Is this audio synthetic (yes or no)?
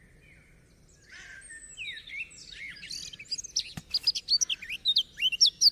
no